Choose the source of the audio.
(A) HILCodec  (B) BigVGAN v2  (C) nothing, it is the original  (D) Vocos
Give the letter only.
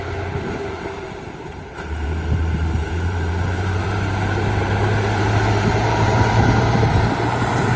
B